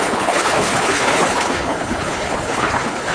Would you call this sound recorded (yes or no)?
no